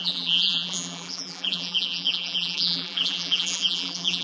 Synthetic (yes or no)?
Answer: yes